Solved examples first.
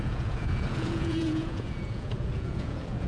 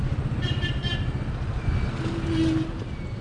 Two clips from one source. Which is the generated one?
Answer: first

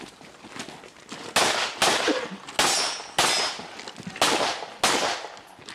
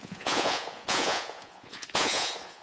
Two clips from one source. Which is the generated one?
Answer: second